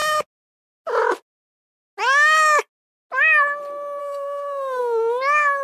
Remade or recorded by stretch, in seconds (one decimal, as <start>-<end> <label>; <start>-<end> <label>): 0.0-4.0 recorded; 4.0-4.8 remade; 4.8-5.6 recorded